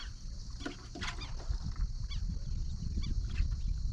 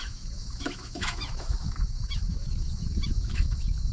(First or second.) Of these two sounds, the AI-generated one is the second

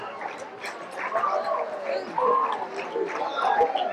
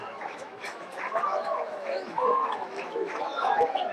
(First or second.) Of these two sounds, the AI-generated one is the second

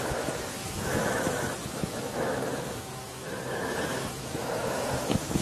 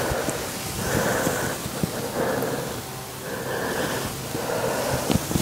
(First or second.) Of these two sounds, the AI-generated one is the first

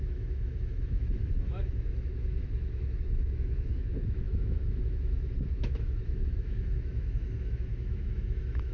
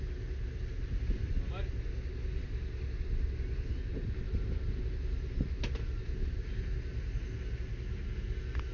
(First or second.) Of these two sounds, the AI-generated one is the first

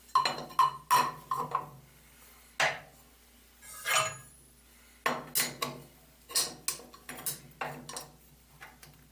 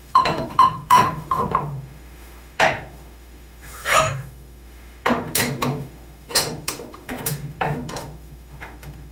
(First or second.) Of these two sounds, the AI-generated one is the second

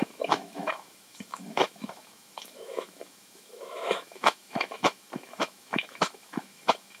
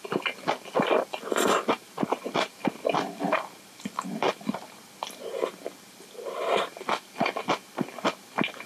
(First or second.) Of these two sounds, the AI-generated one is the first